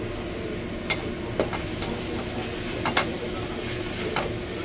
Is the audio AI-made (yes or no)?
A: no